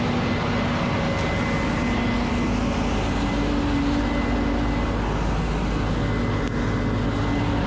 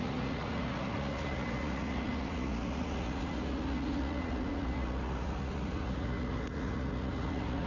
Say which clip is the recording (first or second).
first